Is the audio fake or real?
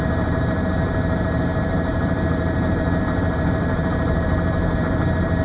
fake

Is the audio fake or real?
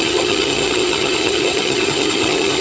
fake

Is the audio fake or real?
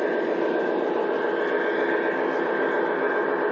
real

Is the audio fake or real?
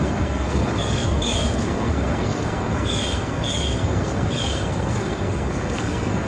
fake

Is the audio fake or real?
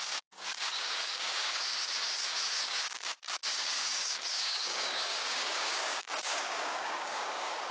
fake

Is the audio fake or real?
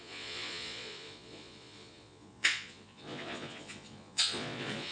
fake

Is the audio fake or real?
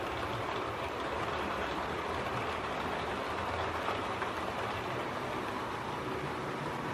fake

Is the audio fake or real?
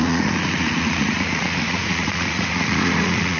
fake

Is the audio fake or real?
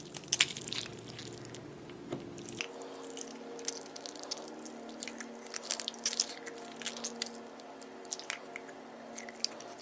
real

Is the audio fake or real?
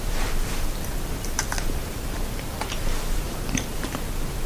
fake